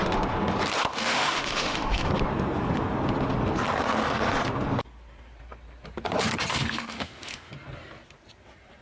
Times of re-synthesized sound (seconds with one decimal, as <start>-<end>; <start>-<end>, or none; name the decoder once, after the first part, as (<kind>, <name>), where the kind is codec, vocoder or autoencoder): 0.9-2.1 (autoencoder, DAC-VAE); 6.5-7.5